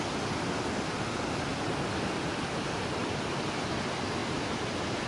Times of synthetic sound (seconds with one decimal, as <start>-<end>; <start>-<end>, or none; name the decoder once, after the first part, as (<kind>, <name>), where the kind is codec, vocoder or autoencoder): none